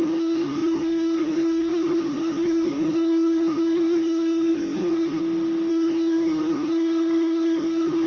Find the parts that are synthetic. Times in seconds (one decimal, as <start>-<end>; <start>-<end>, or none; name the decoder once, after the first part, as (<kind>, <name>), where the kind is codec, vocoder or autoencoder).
0.0-5.2 (codec, SNAC); 5.7-8.1